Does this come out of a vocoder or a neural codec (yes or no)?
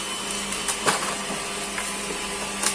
no